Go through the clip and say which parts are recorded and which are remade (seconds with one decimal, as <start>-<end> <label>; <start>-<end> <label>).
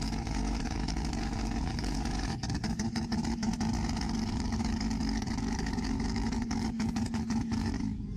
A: 0.0-3.5 remade; 3.5-4.0 recorded; 4.0-8.2 remade